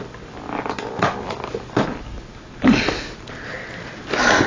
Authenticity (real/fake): real